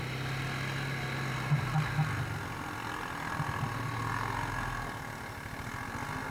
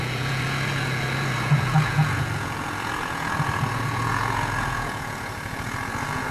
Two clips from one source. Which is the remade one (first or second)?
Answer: second